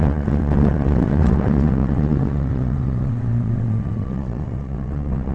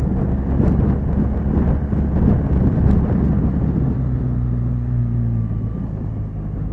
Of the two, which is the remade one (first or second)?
first